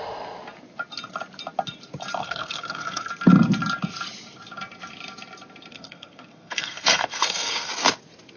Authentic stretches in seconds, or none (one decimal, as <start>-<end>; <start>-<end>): 0.0-2.2; 3.1-5.7; 7.7-8.4